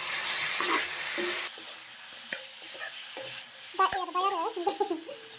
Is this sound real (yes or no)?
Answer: yes